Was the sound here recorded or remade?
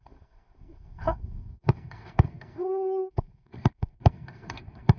remade